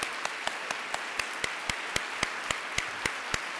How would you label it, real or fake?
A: real